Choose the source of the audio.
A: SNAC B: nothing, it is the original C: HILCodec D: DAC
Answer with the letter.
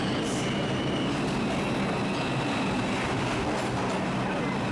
B